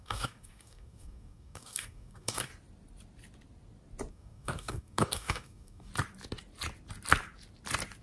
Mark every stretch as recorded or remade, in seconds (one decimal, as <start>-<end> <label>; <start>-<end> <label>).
0.0-2.5 remade; 2.5-4.1 recorded; 4.1-5.9 remade; 5.9-8.0 recorded